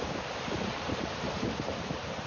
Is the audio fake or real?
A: fake